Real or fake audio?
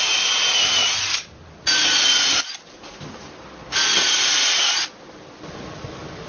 real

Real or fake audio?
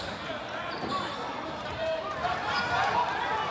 real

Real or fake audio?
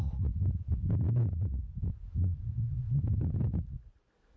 real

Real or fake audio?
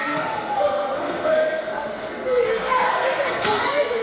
fake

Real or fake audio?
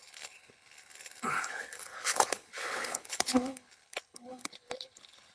fake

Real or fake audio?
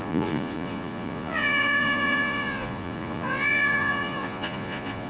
fake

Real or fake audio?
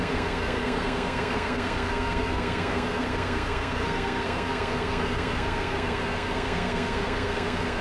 fake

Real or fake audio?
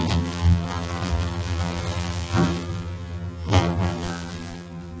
fake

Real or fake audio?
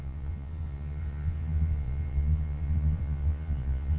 fake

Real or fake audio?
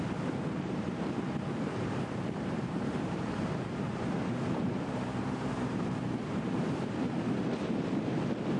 fake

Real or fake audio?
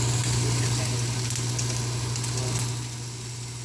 real